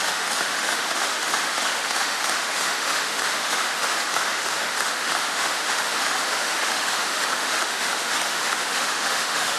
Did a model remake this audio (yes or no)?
yes